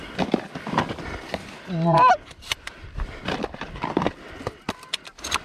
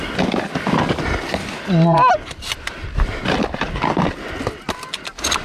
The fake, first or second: first